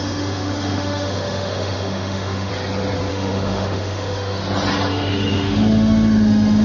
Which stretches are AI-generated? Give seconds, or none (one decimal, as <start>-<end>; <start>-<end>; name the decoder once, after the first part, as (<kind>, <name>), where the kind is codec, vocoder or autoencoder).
0.0-2.5 (autoencoder, DAC-VAE); 3.1-4.4; 4.9-6.6